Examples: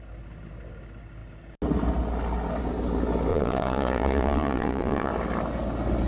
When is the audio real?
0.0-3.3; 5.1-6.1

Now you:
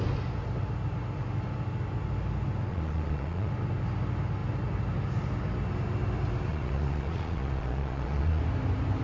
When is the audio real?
0.0-2.7; 3.5-6.5; 8.4-9.0

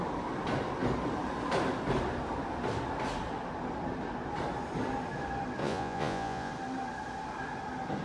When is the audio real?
0.0-5.6; 6.5-8.0

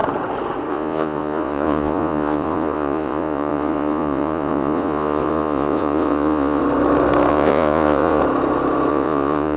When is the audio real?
0.0-0.7; 6.6-7.3; 8.2-8.9

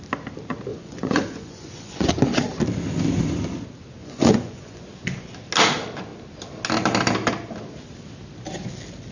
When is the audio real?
0.0-0.7; 2.1-4.0; 4.8-9.1

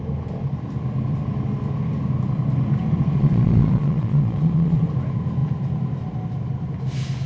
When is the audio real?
0.0-3.2; 4.8-7.3

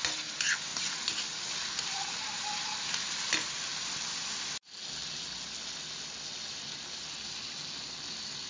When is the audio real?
0.0-8.5

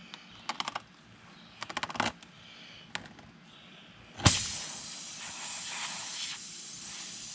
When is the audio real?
0.0-7.3